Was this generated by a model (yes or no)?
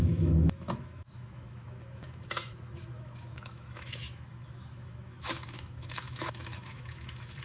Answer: yes